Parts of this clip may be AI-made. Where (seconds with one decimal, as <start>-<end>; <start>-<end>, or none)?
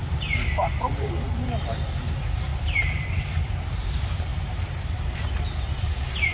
0.0-6.3